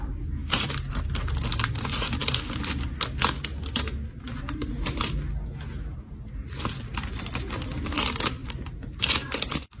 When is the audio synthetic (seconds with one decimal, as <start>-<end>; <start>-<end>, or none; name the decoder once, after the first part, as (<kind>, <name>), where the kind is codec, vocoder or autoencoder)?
0.4-0.9 (vocoder, BigVGAN v2)